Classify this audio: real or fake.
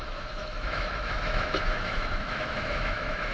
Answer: fake